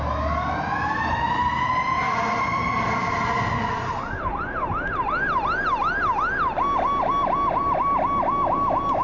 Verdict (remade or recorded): recorded